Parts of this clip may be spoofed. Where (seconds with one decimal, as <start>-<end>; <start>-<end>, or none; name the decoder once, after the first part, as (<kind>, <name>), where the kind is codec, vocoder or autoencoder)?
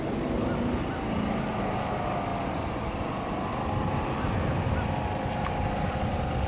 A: none